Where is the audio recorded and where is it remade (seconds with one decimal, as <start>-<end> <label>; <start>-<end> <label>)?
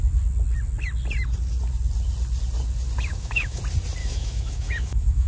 0.0-3.1 recorded; 3.1-3.6 remade; 3.6-4.0 recorded; 4.0-5.3 remade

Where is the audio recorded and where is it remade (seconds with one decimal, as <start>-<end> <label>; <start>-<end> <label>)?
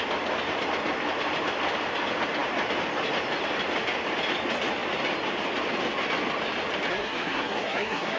0.0-6.9 recorded; 6.9-8.2 remade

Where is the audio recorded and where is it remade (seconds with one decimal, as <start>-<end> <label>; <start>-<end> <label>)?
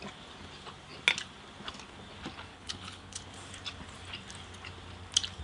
0.0-2.5 recorded; 2.5-3.3 remade; 3.3-5.4 recorded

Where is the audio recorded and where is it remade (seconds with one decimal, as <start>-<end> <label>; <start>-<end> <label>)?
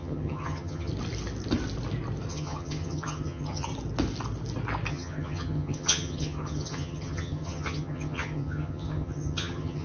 0.0-0.9 remade; 0.9-2.3 recorded; 2.3-3.7 remade; 3.7-4.9 recorded; 4.9-9.8 remade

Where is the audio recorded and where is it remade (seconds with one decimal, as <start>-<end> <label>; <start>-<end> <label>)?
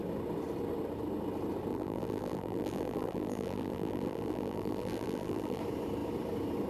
0.0-1.7 recorded; 1.7-5.6 remade; 5.6-6.7 recorded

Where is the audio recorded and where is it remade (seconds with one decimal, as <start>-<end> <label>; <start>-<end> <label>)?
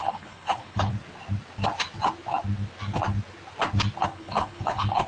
0.0-0.9 remade; 0.9-4.0 recorded; 4.0-5.1 remade